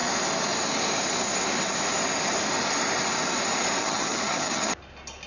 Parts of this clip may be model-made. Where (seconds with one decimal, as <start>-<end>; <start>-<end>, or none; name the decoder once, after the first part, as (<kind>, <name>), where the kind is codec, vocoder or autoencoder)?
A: 3.8-4.7 (vocoder, HiFi-GAN)